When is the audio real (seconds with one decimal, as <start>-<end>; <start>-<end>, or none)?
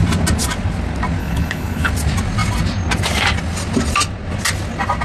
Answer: 0.0-1.2; 1.9-5.0